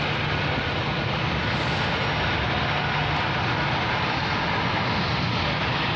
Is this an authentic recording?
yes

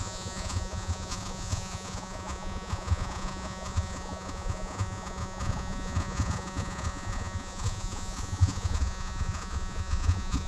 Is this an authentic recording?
no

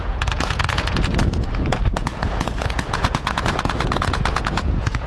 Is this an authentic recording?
no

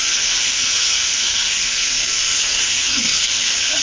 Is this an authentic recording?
no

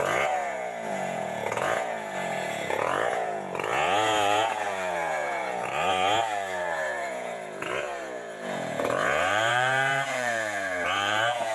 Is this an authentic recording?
no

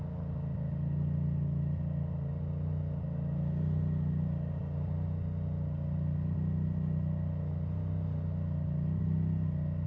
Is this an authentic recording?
yes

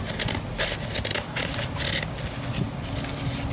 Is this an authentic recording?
yes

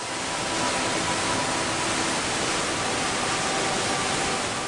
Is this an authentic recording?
yes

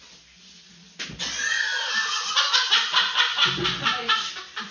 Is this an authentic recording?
yes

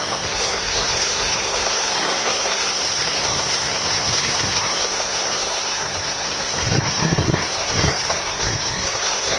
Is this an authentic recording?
no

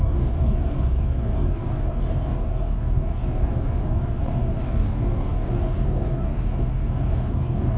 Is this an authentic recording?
no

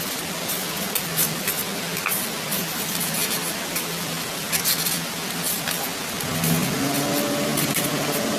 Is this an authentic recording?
yes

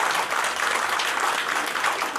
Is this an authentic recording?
yes